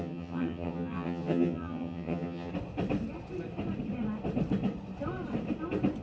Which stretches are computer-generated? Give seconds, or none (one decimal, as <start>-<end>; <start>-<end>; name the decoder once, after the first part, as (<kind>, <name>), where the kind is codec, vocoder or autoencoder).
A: 0.0-2.5 (vocoder, HiFi-GAN)